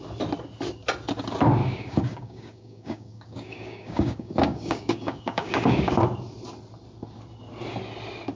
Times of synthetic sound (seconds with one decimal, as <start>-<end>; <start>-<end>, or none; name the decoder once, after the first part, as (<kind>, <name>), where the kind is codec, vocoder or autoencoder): 1.6-5.9 (codec, DAC)